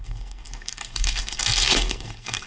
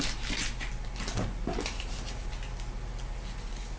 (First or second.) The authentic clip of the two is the second